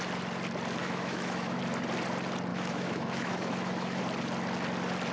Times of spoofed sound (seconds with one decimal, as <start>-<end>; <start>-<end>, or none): 0.8-1.6; 2.5-4.0